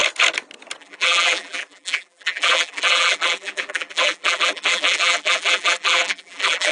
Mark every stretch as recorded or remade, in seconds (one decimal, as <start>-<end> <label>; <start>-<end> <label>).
0.0-0.8 recorded; 0.8-6.7 remade